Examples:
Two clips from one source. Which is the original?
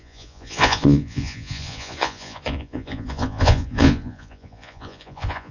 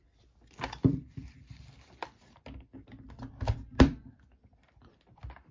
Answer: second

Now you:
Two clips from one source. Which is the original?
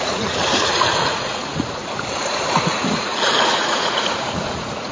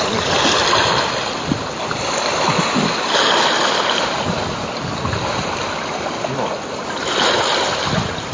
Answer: second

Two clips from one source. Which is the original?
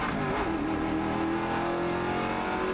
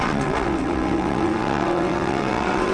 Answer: first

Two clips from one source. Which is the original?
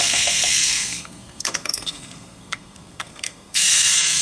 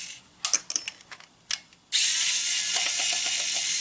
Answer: second